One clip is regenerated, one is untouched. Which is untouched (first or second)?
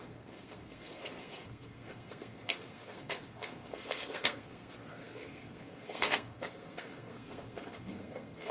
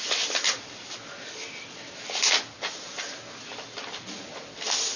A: second